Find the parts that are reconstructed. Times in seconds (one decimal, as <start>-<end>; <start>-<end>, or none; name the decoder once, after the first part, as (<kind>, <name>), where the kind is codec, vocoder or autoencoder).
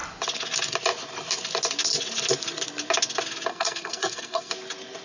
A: 3.5-4.5 (codec, SNAC)